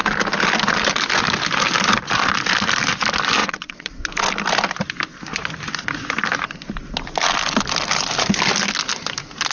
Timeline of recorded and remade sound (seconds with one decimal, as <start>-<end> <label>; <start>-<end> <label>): 0.0-3.4 recorded; 3.4-4.0 remade; 4.0-9.5 recorded

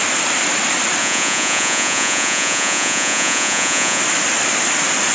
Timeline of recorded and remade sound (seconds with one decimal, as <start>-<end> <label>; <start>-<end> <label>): 0.0-1.0 recorded; 1.0-4.0 remade; 4.0-5.1 recorded